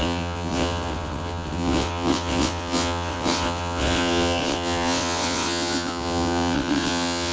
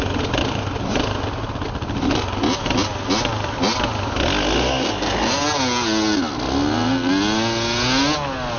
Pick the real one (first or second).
second